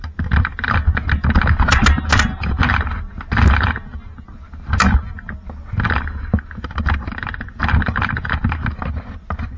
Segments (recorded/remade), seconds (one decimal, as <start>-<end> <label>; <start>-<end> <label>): 0.0-9.6 recorded